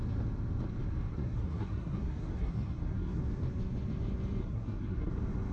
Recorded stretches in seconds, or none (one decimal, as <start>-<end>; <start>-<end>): 0.0-1.1; 3.2-4.4; 5.1-5.5